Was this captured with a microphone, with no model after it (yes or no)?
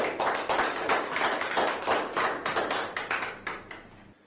yes